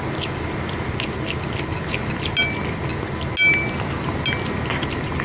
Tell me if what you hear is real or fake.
real